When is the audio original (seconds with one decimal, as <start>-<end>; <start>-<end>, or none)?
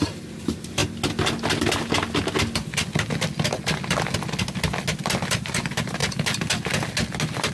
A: 0.8-5.3; 6.0-7.5